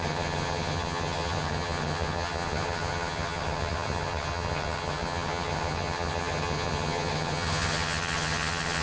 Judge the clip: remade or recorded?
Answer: remade